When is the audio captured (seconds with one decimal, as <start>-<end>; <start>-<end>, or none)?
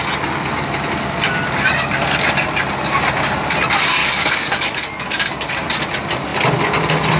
0.0-4.0; 5.5-7.2